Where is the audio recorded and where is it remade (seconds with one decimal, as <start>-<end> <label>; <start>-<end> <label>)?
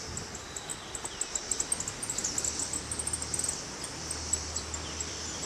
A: 0.0-0.7 remade; 0.7-3.9 recorded; 3.9-5.5 remade